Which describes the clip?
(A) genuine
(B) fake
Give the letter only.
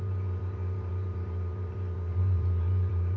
B